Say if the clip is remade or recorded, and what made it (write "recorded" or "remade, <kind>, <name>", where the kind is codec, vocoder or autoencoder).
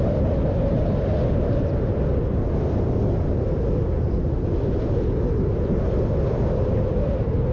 recorded